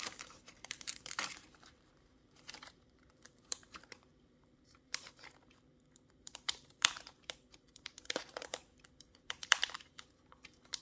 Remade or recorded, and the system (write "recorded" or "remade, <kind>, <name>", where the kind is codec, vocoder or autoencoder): remade, vocoder, BigVGAN v2